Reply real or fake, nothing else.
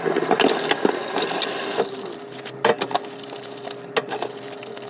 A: real